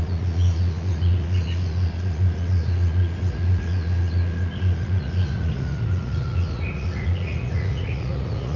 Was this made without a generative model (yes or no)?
no